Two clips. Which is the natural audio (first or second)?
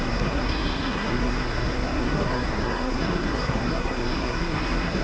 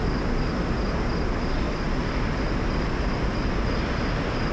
second